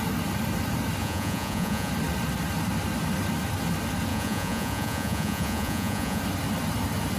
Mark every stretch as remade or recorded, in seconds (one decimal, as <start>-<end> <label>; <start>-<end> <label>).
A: 0.0-1.0 recorded; 1.0-1.9 remade; 1.9-4.1 recorded; 4.1-6.2 remade; 6.2-7.2 recorded